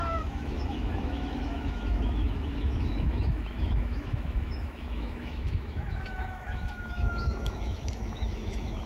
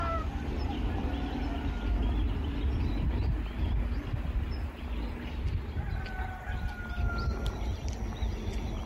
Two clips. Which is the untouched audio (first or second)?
second